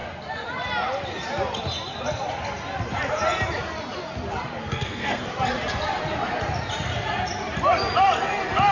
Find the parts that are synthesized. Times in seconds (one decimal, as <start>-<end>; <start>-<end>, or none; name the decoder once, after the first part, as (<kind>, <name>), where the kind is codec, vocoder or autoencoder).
4.6-5.2 (codec, SNAC)